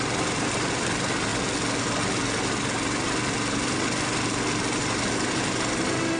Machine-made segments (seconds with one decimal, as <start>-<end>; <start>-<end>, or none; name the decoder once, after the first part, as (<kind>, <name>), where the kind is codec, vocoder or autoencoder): none